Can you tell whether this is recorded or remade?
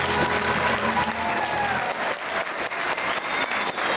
recorded